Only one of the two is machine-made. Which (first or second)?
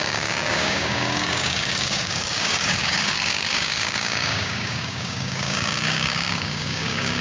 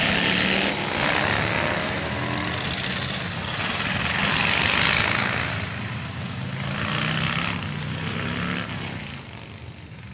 first